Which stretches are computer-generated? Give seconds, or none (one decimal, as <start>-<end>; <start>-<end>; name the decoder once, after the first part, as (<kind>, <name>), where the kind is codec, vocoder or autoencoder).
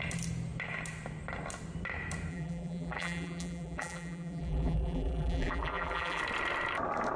2.3-6.2 (vocoder, BigVGAN v2)